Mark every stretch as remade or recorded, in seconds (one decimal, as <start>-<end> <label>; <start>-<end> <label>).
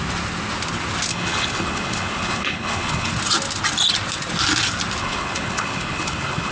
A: 0.0-1.1 recorded; 1.1-3.1 remade; 3.1-5.0 recorded; 5.0-6.5 remade